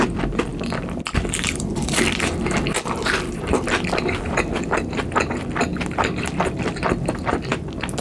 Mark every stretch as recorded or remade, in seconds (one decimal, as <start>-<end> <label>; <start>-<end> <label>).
0.0-0.5 recorded; 0.5-5.0 remade; 5.0-5.7 recorded; 5.7-6.5 remade; 6.5-8.0 recorded